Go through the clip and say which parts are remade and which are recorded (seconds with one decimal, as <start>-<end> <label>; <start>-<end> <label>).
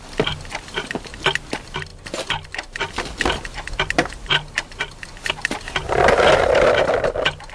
0.0-7.5 recorded